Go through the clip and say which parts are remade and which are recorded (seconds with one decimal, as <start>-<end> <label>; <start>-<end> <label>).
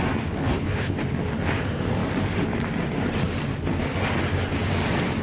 0.0-0.4 recorded; 0.4-1.0 remade; 1.0-5.2 recorded